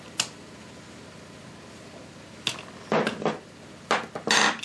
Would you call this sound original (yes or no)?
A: yes